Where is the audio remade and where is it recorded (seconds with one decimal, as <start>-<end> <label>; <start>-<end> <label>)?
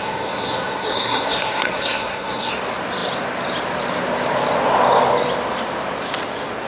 0.0-2.5 remade; 2.5-6.7 recorded